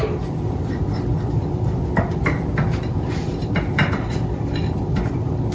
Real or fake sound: fake